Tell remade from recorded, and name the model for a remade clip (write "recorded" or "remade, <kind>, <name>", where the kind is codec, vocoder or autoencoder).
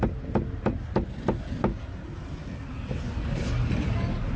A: recorded